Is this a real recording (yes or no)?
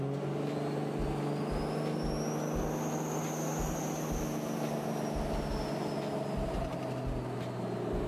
yes